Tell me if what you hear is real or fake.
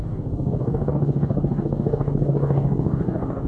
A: fake